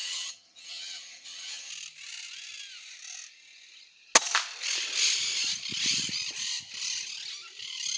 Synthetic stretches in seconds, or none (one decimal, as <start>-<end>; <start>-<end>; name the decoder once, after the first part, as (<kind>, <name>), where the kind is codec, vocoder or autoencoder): 0.0-1.7 (vocoder, HiFi-GAN)